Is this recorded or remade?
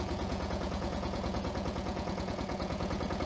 remade